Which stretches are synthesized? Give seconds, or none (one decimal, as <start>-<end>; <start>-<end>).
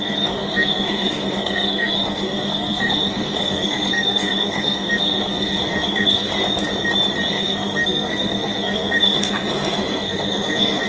0.0-6.3; 7.3-10.9